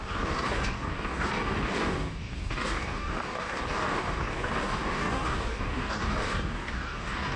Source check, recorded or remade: remade